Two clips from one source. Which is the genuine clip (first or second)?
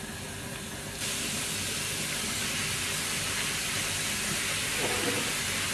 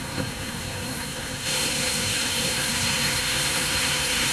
first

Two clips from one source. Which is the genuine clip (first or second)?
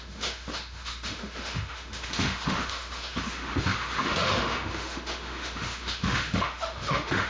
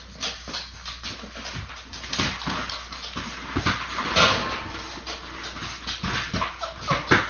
second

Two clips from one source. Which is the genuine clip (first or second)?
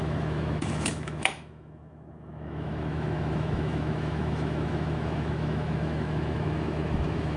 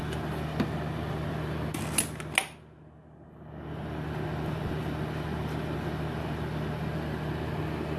second